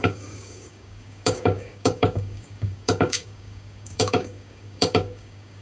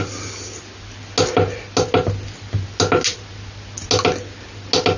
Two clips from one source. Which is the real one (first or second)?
second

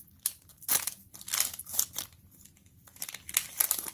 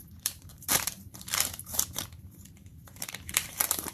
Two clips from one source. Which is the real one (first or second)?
first